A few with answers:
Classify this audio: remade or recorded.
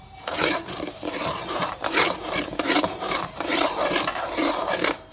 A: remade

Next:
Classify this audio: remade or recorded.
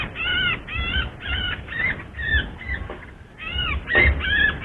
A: recorded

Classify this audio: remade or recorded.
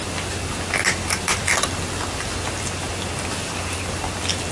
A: recorded